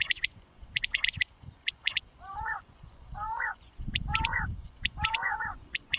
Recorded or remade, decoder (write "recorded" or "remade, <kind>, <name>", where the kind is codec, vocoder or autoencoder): remade, vocoder, Vocos